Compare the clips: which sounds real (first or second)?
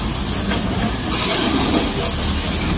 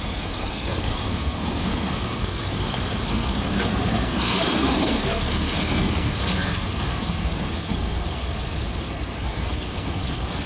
first